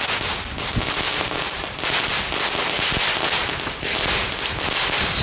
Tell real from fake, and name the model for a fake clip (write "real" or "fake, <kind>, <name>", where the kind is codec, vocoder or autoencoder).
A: real